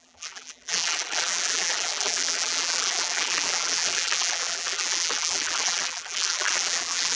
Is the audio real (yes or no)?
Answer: no